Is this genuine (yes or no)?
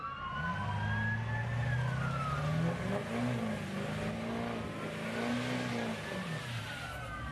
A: yes